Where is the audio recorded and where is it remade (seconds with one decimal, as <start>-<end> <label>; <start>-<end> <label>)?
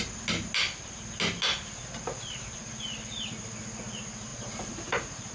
0.0-4.3 recorded; 4.3-5.3 remade